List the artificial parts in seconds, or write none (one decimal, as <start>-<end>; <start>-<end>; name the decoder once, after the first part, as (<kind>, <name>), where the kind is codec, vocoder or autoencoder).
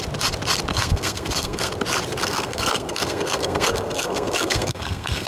0.7-1.7 (codec, SNAC); 2.2-5.3